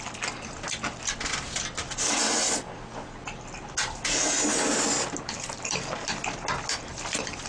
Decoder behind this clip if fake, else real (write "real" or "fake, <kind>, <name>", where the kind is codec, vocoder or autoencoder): real